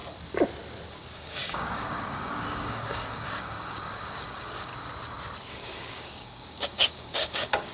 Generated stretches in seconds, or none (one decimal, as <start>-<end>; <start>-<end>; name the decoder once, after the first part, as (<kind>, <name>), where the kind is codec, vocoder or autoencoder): 0.9-4.7 (codec, DAC); 5.5-7.7